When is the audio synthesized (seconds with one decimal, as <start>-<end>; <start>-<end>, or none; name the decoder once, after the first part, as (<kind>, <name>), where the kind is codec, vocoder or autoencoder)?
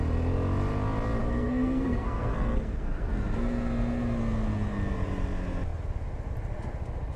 1.2-3.1 (codec, SNAC)